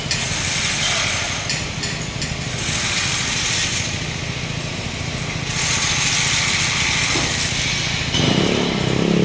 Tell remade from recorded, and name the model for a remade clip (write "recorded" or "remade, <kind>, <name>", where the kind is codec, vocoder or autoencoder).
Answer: recorded